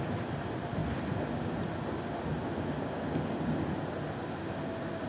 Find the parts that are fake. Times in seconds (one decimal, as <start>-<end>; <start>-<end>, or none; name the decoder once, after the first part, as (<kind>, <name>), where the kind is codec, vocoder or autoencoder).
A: none